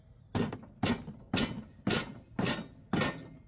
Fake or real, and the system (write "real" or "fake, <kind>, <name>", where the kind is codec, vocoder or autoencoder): real